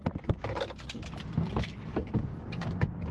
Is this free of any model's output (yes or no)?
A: yes